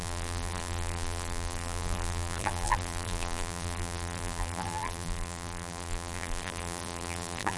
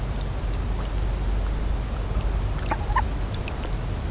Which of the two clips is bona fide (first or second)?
second